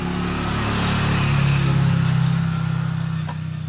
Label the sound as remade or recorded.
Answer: recorded